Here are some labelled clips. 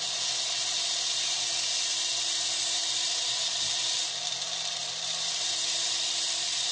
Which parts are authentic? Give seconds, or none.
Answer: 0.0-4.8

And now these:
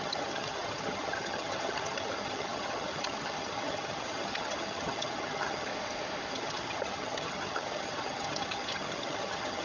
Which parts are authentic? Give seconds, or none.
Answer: 5.7-6.3